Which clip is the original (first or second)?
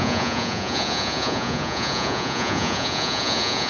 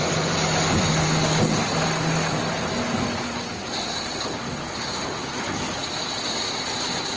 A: second